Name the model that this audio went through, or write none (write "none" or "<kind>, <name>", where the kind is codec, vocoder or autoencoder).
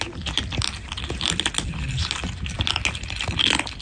none